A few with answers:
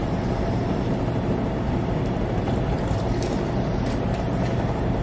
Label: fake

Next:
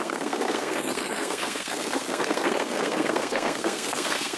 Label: fake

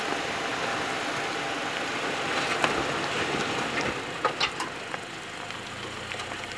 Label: real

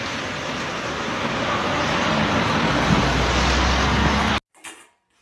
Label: real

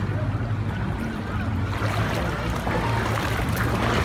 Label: real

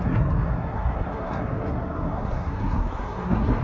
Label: fake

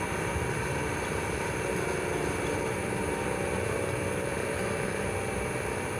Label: fake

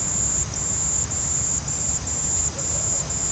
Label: fake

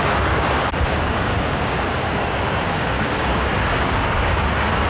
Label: fake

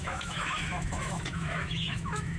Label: fake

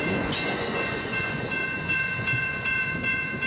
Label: fake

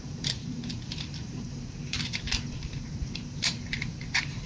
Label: fake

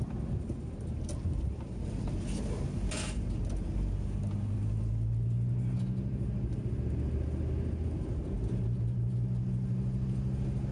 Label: real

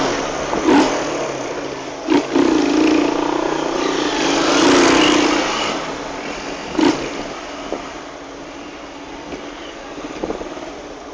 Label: real